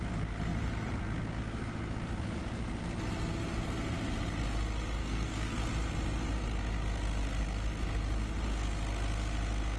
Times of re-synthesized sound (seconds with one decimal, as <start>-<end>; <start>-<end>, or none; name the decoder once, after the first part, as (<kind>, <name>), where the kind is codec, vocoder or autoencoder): 5.0-5.6 (codec, SNAC)